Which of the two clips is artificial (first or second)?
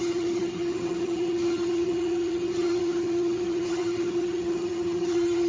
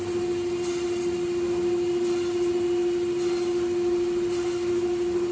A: first